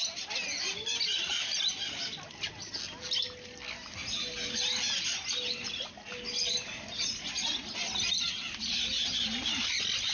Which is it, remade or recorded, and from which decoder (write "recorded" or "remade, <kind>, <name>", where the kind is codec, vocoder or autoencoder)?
recorded